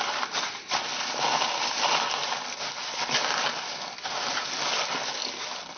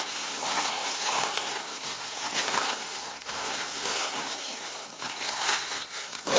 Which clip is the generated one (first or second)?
second